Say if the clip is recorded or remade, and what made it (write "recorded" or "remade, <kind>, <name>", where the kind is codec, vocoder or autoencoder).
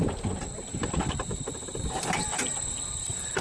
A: remade, vocoder, BigVGAN v2